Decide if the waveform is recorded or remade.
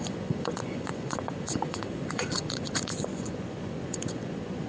remade